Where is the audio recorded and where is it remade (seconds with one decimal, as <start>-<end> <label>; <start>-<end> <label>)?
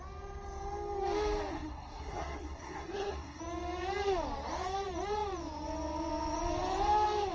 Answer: 0.0-1.5 recorded; 1.5-3.4 remade; 3.4-7.3 recorded